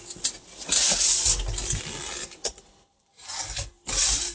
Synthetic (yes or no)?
no